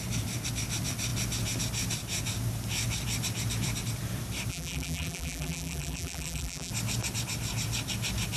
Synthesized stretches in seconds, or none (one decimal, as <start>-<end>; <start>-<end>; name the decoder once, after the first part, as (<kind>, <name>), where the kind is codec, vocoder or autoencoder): 4.5-6.7 (vocoder, BigVGAN v2)

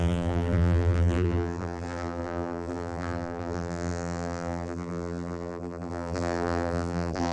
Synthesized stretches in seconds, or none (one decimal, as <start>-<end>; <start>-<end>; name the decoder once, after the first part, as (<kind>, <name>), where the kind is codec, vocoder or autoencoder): 0.0-7.3 (vocoder, BigVGAN v2)

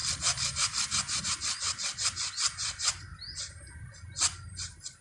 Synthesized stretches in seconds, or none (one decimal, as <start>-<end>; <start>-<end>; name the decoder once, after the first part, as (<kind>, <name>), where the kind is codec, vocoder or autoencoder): none

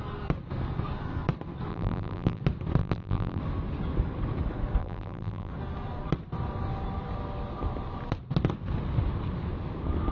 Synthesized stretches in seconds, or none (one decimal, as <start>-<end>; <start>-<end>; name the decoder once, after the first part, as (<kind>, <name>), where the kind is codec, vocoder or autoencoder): 1.7-2.4 (vocoder, BigVGAN v2); 2.8-3.4; 4.8-5.5

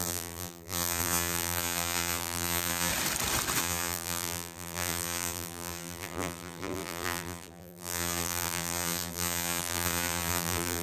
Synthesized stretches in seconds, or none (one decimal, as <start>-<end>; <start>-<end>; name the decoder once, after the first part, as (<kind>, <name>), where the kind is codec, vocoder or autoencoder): 0.0-2.9 (vocoder, BigVGAN v2); 3.6-10.8